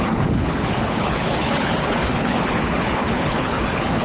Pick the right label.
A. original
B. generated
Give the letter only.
B